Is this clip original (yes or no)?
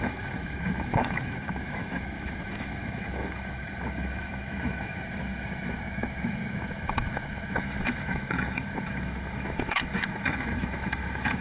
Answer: no